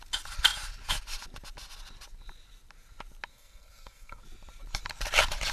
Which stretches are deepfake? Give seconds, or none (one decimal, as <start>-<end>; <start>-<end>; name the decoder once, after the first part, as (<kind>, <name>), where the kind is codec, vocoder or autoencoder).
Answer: 3.3-4.2 (codec, SNAC)